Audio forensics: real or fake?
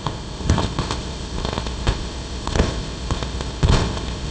fake